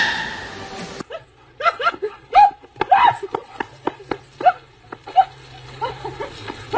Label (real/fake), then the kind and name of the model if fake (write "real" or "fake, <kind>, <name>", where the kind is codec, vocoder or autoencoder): real